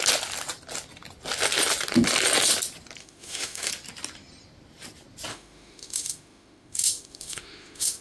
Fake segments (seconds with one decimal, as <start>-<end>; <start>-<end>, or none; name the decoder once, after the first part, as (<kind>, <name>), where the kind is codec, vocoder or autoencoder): 3.0-3.7 (autoencoder, DAC-VAE); 5.3-8.0